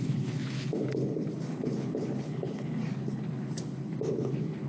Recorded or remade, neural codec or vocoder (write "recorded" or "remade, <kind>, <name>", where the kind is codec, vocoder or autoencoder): remade, codec, HILCodec